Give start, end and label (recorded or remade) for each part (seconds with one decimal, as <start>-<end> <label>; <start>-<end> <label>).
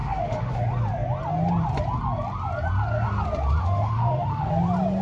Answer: 0.0-0.6 remade; 0.6-3.6 recorded; 3.6-4.5 remade; 4.5-5.0 recorded